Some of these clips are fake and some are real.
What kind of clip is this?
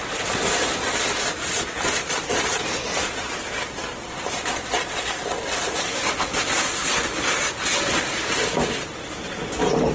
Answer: real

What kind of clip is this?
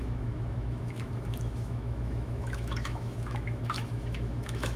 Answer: fake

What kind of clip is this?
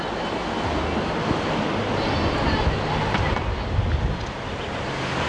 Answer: real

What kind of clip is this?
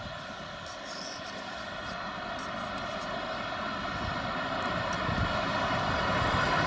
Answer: real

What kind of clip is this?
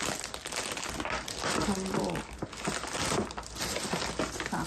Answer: real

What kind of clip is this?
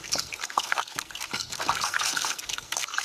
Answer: fake